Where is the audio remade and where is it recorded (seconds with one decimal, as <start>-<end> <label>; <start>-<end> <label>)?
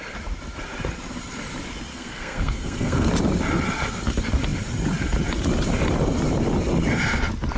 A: 0.0-1.9 recorded; 1.9-3.1 remade; 3.1-7.6 recorded